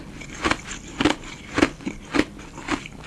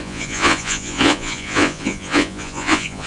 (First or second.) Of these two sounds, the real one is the first